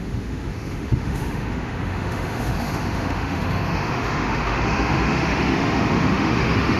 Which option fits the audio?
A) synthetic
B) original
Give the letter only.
A